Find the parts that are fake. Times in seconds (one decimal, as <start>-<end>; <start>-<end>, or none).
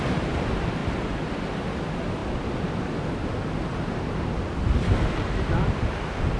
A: none